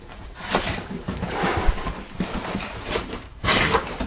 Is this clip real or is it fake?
fake